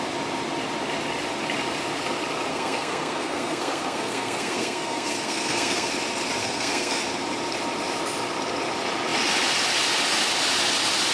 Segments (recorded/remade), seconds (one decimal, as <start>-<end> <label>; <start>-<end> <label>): 0.0-2.5 recorded; 2.5-5.9 remade; 5.9-6.4 recorded; 6.4-7.0 remade; 7.0-11.1 recorded